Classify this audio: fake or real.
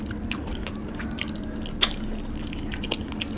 real